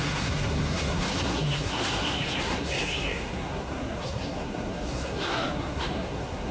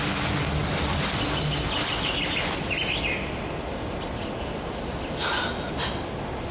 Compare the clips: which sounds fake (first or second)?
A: first